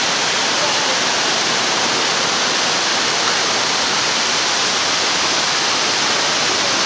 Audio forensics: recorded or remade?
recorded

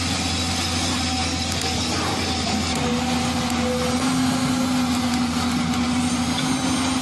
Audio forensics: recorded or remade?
recorded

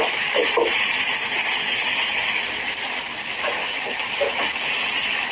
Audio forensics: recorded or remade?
recorded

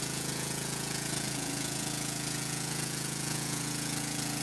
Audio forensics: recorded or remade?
remade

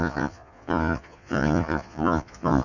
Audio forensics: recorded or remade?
remade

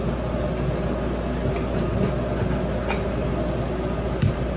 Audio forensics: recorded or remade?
recorded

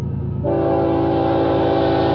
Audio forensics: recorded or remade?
recorded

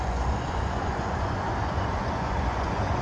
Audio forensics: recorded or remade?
remade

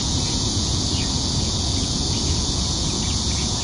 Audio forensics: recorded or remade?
remade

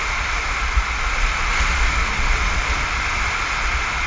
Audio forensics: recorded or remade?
recorded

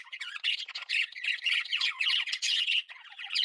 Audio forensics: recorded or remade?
remade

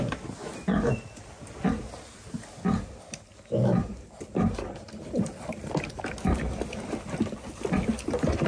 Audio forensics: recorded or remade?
recorded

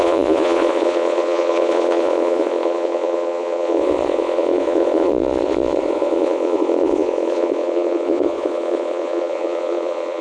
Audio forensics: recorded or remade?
remade